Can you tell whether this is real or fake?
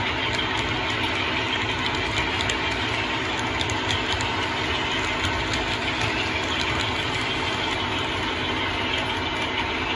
real